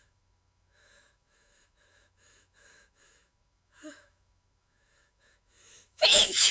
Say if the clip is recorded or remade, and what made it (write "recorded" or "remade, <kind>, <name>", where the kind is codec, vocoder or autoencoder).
remade, autoencoder, DAC-VAE